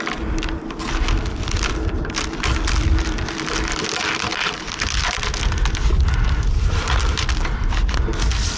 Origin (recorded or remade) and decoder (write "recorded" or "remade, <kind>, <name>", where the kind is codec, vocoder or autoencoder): recorded